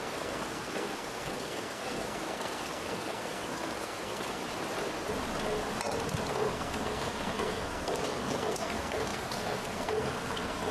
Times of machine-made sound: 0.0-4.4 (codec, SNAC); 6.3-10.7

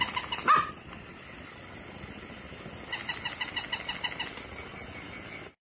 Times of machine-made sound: 0.4-1.6 (vocoder, BigVGAN v2); 4.7-5.6

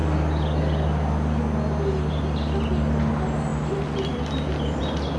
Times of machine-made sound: none

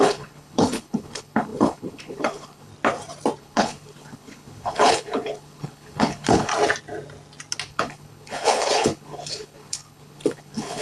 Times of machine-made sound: 0.0-2.7 (codec, HILCodec); 3.4-6.5; 7.7-10.8

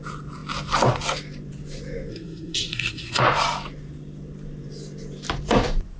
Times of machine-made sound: 2.1-3.2 (codec, SNAC)